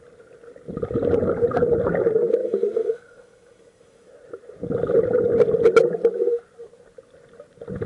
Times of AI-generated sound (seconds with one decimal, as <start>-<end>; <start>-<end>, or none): 2.4-4.1